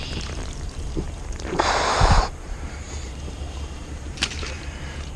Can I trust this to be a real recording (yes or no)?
no